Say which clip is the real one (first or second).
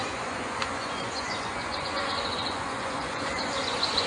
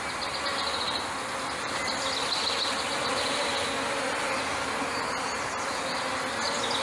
second